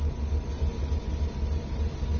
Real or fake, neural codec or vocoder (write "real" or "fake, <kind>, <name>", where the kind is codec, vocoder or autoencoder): real